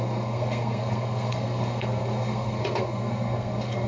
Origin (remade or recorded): remade